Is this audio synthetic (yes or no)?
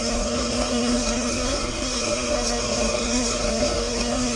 yes